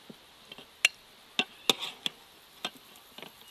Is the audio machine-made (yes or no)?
no